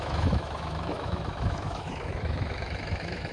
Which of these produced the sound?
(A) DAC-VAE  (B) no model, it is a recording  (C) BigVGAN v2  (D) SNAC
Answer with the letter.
A